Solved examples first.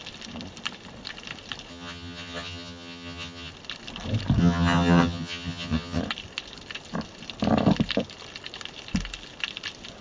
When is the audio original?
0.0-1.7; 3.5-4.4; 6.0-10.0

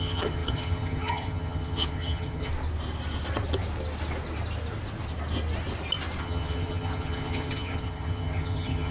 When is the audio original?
2.5-6.2

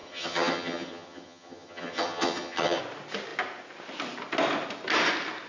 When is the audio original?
2.8-5.5

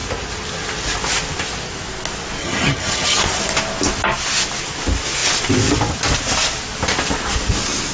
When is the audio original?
0.0-2.4; 3.2-7.9

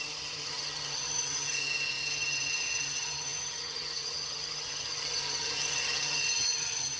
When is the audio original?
none

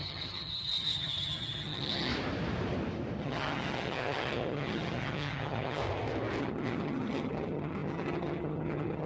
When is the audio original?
2.1-3.2; 5.8-6.4

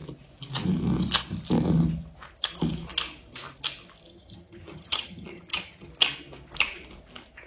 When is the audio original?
0.0-4.1; 5.9-7.5

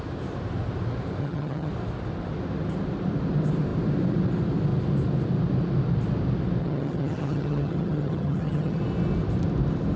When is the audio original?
0.0-1.2; 1.7-6.6; 8.8-10.0